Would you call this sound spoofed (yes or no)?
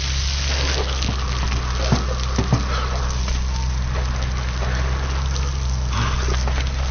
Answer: no